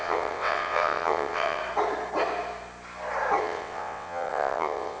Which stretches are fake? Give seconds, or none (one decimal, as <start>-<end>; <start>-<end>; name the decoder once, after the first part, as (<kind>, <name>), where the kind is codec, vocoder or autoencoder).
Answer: 0.0-1.6 (vocoder, WaveNeXt); 3.4-5.0